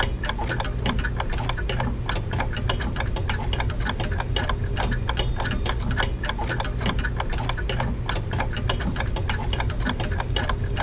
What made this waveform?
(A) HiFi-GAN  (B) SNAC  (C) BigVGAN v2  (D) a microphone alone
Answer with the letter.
D